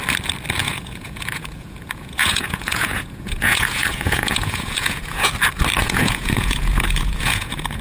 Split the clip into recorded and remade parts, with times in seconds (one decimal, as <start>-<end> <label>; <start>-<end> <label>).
0.0-0.6 recorded; 0.6-5.3 remade; 5.3-5.8 recorded; 5.8-7.8 remade